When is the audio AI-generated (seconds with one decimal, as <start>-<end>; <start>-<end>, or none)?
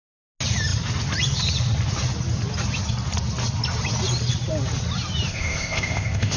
5.3-6.4